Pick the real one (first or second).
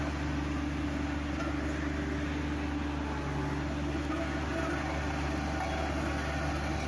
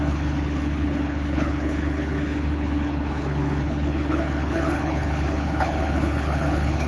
first